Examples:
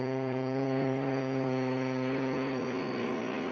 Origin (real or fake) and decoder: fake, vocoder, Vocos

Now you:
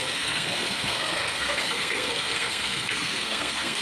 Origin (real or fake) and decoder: fake, codec, SNAC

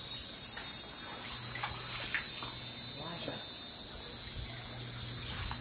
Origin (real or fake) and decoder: real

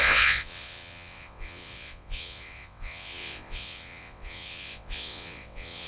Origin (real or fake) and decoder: fake, vocoder, WaveNeXt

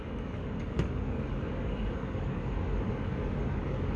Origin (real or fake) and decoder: fake, codec, DAC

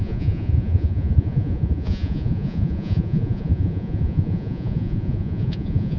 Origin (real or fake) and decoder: fake, vocoder, Vocos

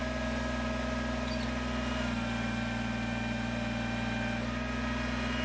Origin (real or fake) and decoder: real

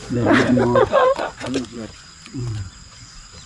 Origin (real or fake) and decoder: fake, vocoder, Vocos